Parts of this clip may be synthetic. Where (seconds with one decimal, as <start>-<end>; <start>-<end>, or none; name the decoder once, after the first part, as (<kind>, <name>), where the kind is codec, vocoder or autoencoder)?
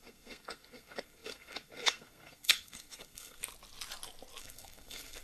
0.0-3.4 (codec, SNAC); 4.4-5.2